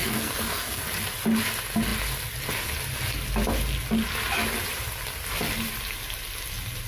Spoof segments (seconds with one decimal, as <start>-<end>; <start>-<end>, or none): 0.0-0.8